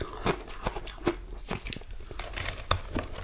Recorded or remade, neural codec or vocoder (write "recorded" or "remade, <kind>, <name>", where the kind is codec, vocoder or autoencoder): recorded